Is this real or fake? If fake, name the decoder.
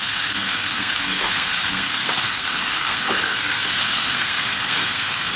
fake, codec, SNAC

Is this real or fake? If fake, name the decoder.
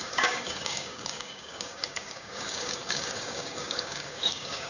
fake, codec, DAC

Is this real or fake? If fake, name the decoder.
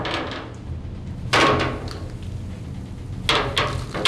real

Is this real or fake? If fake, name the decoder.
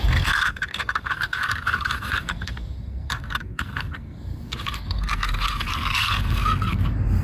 fake, codec, SNAC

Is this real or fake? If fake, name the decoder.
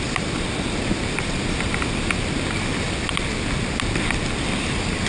real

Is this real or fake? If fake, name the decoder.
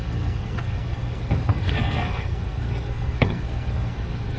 fake, codec, SNAC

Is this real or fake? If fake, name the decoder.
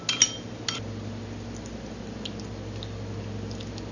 real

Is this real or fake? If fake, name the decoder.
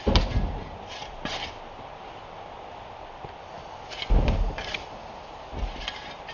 real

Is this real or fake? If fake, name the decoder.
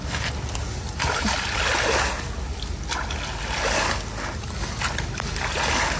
real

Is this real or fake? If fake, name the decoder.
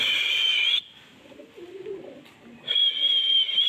real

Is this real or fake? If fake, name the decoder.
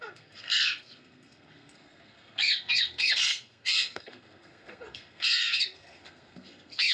fake, codec, SNAC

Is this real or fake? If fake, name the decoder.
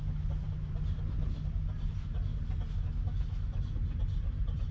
real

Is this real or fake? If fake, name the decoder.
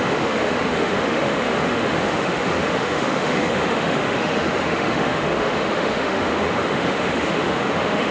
fake, autoencoder, DAC-VAE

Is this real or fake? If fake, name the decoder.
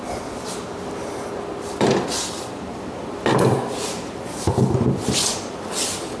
real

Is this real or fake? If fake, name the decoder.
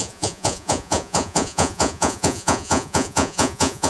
fake, vocoder, Vocos